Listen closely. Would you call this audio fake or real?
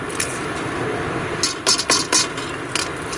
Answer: real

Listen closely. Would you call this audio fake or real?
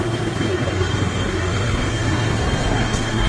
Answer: fake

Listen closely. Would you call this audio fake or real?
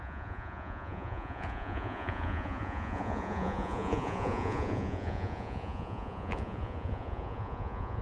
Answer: fake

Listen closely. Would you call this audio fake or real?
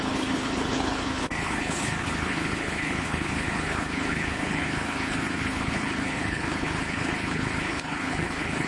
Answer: fake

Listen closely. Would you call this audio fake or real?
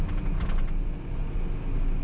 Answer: real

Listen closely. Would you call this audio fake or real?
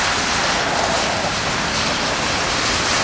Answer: real